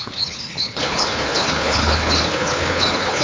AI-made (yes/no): yes